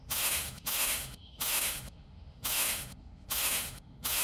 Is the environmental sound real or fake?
fake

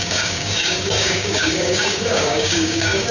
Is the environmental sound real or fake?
fake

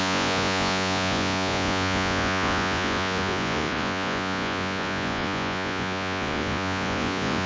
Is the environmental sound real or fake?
fake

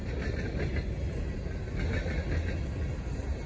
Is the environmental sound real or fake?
real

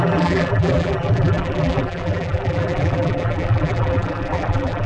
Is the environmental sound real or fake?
fake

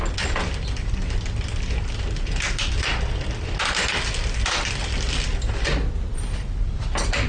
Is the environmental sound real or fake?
real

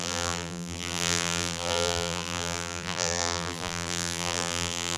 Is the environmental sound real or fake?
fake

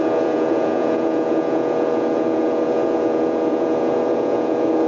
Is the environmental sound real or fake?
fake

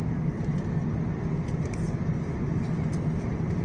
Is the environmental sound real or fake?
real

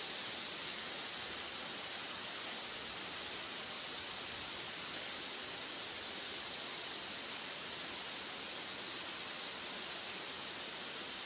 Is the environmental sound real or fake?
real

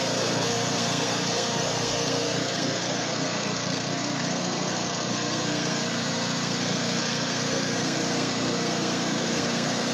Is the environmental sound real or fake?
fake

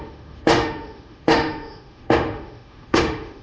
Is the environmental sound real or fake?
fake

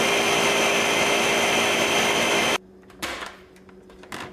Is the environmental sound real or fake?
real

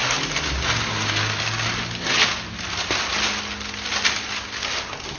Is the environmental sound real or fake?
real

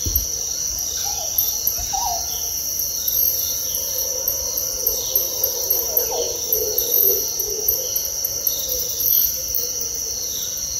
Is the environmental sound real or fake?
real